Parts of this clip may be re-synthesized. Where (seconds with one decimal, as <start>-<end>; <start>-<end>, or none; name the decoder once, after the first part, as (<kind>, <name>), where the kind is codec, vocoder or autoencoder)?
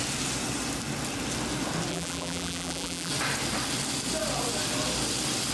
1.9-3.1 (vocoder, BigVGAN v2)